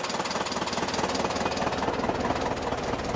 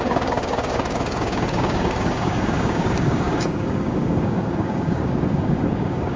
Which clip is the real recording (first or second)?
first